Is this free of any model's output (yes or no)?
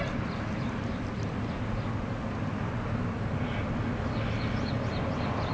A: yes